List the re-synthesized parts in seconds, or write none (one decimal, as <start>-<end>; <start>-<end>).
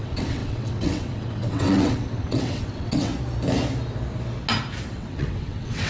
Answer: 0.0-3.1; 4.9-5.9